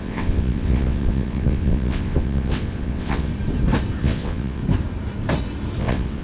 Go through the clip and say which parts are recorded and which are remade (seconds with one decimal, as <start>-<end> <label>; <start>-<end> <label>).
0.0-3.3 remade; 3.3-4.0 recorded; 4.0-4.6 remade; 4.6-5.8 recorded; 5.8-6.2 remade